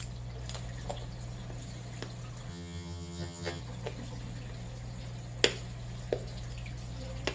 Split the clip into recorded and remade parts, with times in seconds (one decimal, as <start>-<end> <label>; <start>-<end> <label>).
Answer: 0.0-2.5 recorded; 2.5-3.6 remade; 3.6-7.3 recorded